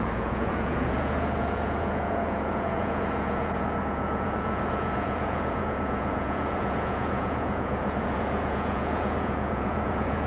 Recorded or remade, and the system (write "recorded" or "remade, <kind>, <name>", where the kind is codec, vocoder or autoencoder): remade, vocoder, Vocos